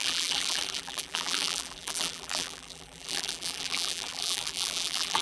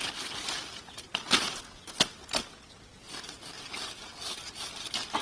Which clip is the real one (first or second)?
second